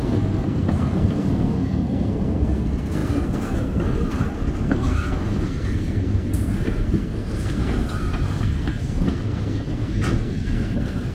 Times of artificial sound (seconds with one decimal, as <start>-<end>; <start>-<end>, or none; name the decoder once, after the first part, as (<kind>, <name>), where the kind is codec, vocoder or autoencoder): 0.0-11.1 (codec, SNAC)